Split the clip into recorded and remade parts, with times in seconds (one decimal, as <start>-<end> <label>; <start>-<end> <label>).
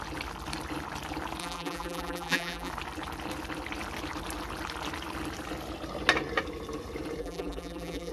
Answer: 0.0-1.4 recorded; 1.4-2.7 remade; 2.7-7.2 recorded; 7.2-8.1 remade